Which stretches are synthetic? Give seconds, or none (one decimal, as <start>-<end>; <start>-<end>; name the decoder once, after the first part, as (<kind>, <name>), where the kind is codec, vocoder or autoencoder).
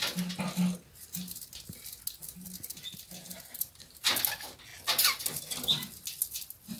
none